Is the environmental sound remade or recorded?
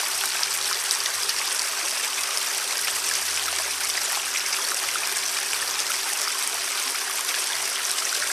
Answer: recorded